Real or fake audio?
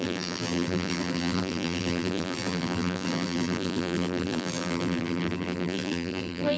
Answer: fake